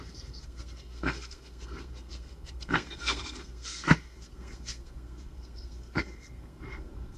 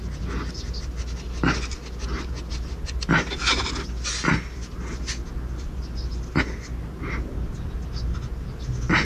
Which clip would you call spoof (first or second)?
first